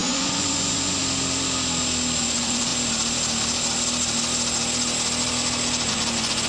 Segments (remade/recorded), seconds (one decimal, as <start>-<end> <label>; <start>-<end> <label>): 0.0-1.0 remade; 1.0-2.2 recorded; 2.2-2.7 remade; 2.7-5.9 recorded; 5.9-6.5 remade